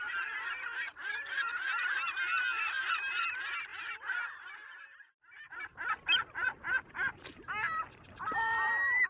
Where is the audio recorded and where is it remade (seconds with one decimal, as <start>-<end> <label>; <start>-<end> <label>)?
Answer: 0.0-1.5 remade; 1.5-2.9 recorded; 2.9-9.1 remade